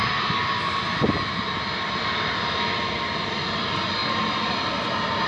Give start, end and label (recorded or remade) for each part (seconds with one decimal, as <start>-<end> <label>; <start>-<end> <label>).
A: 0.0-5.3 recorded